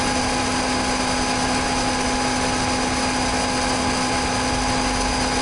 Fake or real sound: real